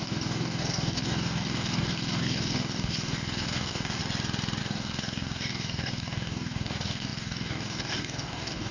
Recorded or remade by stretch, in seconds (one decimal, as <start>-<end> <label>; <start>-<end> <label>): 0.0-4.0 remade; 4.0-4.6 recorded; 4.6-8.7 remade